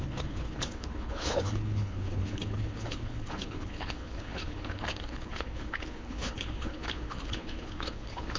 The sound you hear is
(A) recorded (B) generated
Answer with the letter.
B